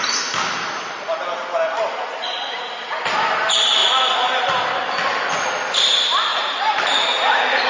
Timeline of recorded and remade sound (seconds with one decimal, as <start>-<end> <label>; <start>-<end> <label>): 0.0-6.3 recorded; 6.3-7.0 remade; 7.0-7.7 recorded